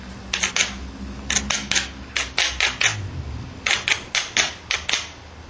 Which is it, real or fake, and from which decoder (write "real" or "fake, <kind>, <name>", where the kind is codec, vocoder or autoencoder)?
real